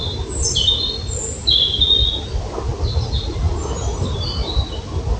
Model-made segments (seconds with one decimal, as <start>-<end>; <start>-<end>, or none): none